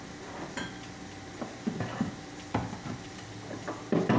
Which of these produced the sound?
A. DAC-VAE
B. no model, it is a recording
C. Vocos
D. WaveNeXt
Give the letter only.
B